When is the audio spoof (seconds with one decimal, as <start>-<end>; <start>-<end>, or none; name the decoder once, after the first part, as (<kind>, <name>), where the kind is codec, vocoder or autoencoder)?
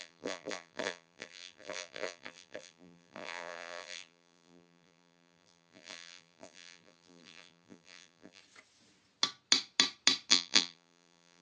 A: 0.0-8.4 (vocoder, BigVGAN v2); 10.3-11.4